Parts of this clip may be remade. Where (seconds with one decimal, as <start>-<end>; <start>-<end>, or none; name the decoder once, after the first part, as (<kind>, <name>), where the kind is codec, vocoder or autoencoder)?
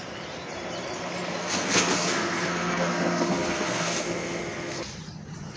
1.4-4.8 (codec, SNAC)